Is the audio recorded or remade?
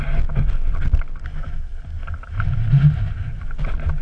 recorded